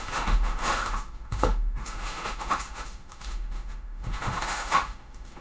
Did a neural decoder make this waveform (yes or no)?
yes